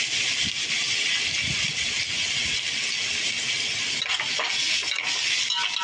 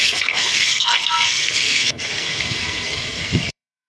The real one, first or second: first